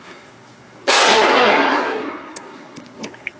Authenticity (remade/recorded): remade